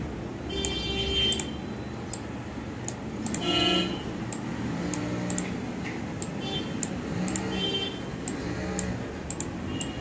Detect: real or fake real